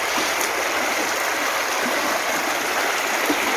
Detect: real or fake real